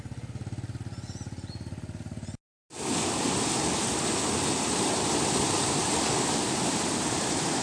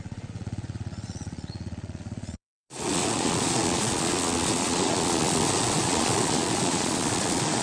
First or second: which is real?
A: first